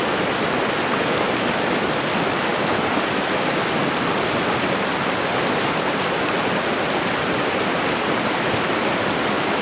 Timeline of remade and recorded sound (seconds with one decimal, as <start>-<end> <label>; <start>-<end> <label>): 0.0-9.6 recorded